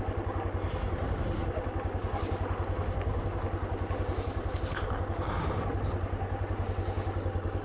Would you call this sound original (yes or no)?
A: yes